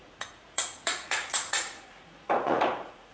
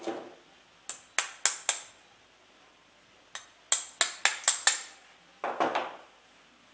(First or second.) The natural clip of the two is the second